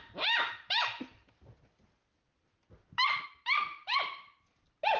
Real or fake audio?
real